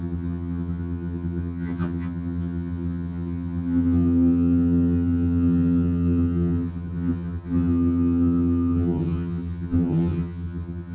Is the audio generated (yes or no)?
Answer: yes